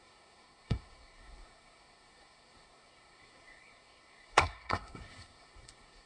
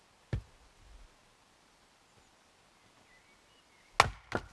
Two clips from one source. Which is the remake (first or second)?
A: first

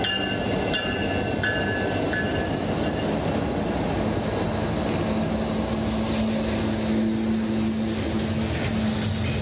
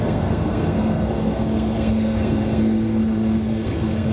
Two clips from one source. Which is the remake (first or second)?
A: second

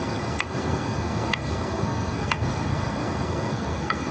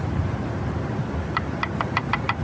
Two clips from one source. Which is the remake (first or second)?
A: first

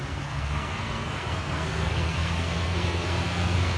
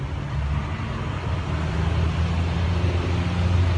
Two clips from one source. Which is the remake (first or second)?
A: first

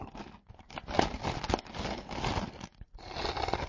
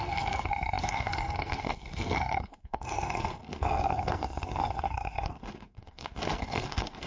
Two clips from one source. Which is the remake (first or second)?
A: second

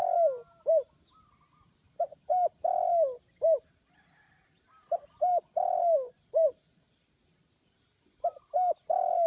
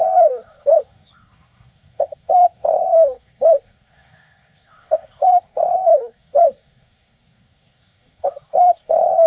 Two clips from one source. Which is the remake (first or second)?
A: second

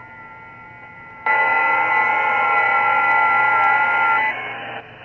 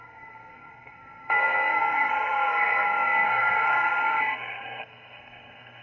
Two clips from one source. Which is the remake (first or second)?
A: second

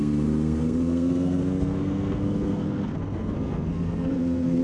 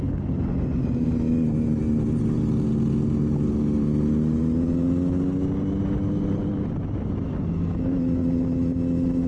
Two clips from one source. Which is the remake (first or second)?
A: first